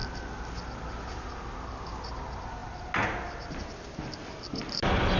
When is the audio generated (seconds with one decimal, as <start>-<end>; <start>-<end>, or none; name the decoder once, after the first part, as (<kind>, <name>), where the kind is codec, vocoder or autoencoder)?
none